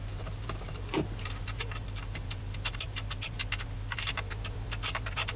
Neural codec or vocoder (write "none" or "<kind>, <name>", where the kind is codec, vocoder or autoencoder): vocoder, BigVGAN v2